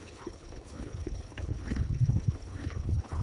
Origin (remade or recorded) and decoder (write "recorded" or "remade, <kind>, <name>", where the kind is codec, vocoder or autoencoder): remade, codec, HILCodec